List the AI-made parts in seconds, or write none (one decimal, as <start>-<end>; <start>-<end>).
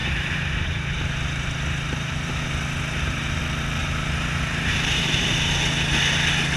0.0-3.4; 3.8-5.5